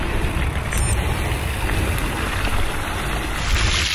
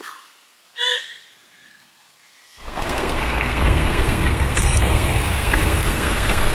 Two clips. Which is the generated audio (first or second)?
second